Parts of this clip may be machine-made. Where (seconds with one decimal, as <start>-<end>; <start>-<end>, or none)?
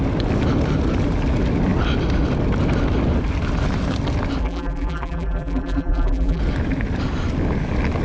4.4-6.4